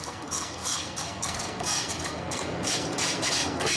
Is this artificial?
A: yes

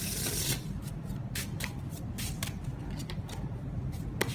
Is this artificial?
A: no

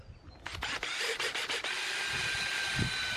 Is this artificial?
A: no